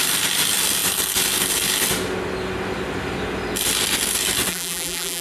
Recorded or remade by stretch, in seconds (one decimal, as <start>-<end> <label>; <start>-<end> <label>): 0.0-4.5 recorded; 4.5-5.2 remade